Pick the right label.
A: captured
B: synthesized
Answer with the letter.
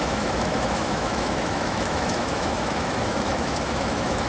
B